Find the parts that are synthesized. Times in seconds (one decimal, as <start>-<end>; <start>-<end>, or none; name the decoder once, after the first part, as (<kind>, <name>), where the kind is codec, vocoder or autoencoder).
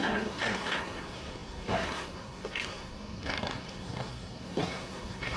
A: 0.0-5.4 (codec, SNAC)